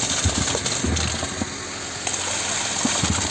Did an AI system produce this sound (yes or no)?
no